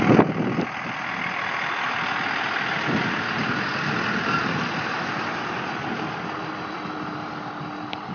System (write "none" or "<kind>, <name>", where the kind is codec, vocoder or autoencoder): none